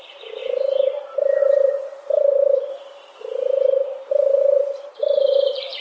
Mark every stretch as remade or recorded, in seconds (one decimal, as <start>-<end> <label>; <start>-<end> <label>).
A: 0.0-1.8 remade; 1.8-2.9 recorded; 2.9-5.8 remade